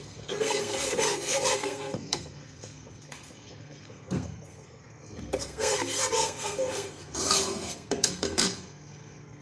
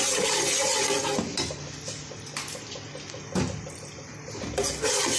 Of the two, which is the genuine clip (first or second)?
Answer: second